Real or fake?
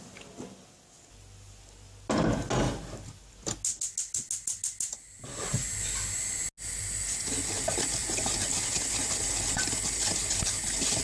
real